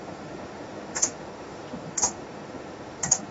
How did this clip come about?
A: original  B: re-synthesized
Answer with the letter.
B